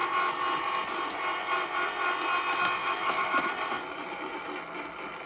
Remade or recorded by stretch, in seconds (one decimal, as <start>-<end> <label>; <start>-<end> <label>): 0.0-2.8 recorded; 2.8-3.5 remade; 3.5-5.3 recorded